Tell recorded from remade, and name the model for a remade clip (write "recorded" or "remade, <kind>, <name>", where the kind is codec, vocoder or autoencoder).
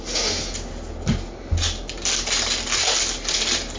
recorded